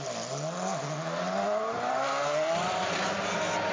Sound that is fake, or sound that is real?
real